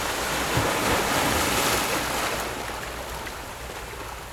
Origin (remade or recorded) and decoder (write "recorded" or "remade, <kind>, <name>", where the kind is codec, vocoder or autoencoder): recorded